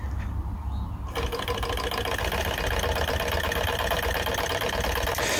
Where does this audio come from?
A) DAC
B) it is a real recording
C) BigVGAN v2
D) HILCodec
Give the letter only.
B